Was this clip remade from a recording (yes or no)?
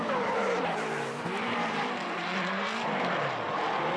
no